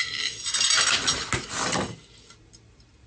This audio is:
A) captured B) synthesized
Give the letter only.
A